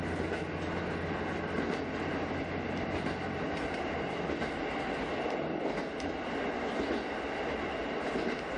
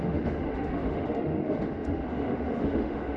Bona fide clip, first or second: first